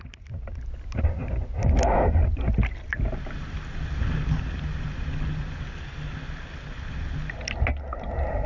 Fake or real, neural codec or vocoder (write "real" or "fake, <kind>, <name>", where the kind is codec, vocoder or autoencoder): real